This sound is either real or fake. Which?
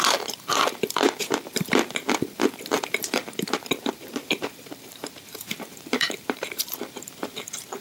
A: fake